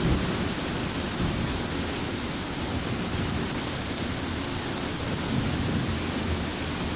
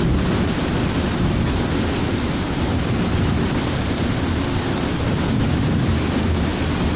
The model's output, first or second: second